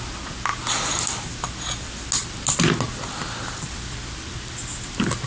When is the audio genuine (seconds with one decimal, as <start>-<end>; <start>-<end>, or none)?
0.0-5.3